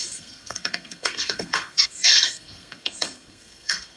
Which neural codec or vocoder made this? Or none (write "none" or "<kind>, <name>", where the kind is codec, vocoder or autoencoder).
codec, SNAC